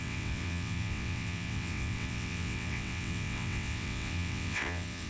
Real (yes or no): no